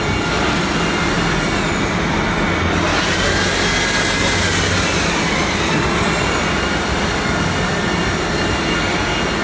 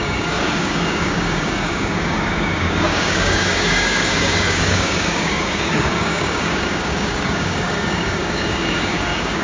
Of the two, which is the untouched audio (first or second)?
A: first